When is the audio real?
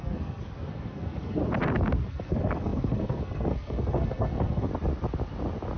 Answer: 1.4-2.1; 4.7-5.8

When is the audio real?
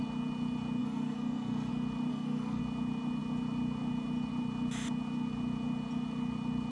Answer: 0.0-0.8; 1.7-2.1; 2.6-6.7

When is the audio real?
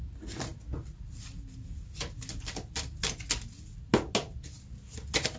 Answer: 0.0-5.4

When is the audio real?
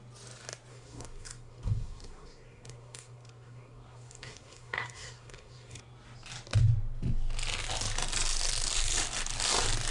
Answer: 0.0-0.7; 5.8-9.9